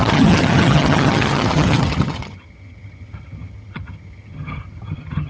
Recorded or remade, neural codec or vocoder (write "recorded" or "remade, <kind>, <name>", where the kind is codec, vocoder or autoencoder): remade, vocoder, HiFi-GAN